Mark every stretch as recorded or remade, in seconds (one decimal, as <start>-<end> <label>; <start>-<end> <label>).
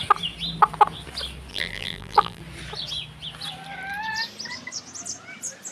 0.0-1.5 recorded; 1.5-2.4 remade; 2.4-5.7 recorded